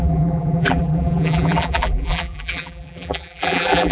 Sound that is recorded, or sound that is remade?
remade